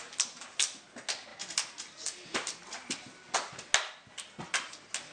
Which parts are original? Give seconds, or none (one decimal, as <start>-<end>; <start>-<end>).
0.0-5.1